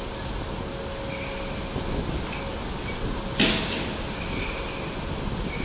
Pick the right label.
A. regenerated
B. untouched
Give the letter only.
B